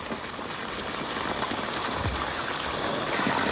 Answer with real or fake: real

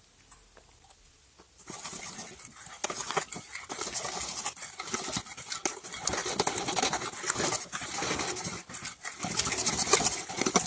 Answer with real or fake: real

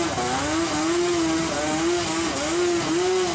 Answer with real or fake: real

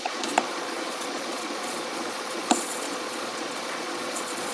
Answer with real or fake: fake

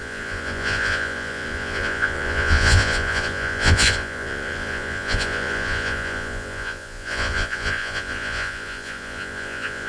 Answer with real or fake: fake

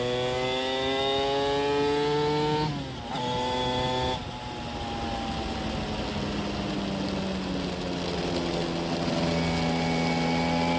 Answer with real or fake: real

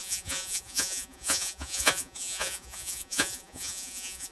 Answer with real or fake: fake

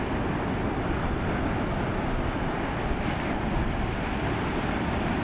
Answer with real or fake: real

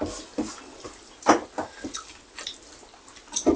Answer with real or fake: real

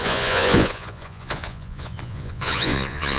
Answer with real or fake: fake